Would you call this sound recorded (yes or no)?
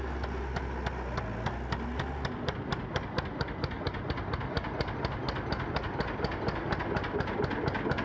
yes